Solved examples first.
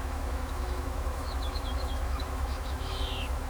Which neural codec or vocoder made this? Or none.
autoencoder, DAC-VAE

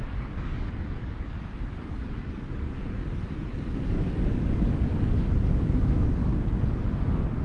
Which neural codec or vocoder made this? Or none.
codec, DAC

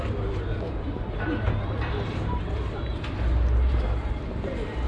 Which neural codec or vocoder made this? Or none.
vocoder, BigVGAN v2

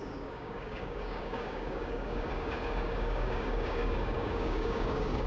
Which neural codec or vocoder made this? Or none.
codec, DAC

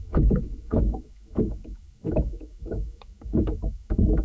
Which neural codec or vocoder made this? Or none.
autoencoder, DAC-VAE